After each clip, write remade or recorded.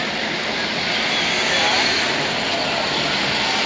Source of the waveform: recorded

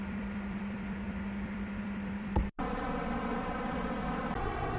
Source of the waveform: remade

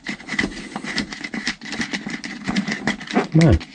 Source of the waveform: recorded